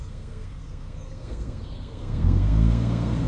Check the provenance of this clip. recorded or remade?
remade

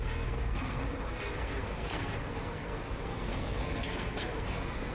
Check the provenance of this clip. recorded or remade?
remade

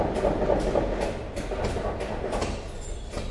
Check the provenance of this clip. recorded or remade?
recorded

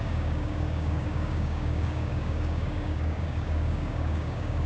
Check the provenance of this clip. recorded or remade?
remade